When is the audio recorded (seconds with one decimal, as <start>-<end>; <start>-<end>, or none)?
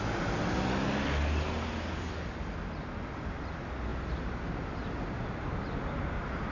0.0-6.5